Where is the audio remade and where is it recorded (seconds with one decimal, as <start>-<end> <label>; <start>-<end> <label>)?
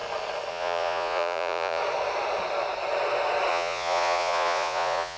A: 0.0-0.5 recorded; 0.5-1.8 remade; 1.8-3.5 recorded; 3.5-5.2 remade